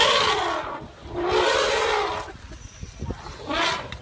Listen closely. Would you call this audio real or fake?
real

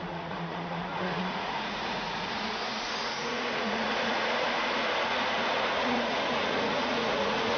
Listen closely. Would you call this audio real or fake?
fake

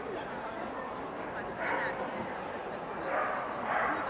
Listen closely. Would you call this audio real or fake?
real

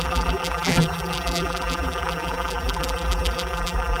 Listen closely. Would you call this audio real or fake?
fake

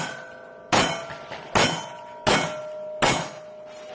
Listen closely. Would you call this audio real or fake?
real